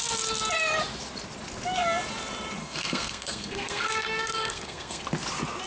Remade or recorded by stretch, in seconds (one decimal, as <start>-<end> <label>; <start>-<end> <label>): 0.0-2.6 recorded; 2.6-5.0 remade; 5.0-5.7 recorded